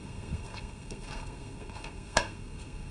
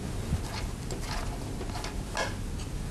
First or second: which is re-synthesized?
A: first